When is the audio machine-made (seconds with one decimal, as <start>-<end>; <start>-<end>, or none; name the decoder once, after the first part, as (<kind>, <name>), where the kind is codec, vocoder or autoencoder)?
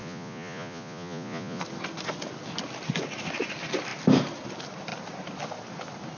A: 0.0-1.6 (vocoder, Vocos)